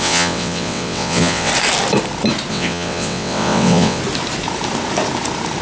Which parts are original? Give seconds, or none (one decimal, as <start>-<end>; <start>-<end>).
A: 1.5-2.5; 4.0-5.6